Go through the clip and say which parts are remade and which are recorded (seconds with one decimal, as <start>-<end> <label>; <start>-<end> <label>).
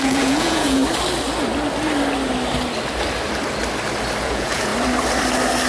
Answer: 0.0-0.8 remade; 0.8-4.2 recorded; 4.2-4.7 remade; 4.7-5.7 recorded